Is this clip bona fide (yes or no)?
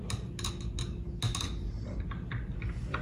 yes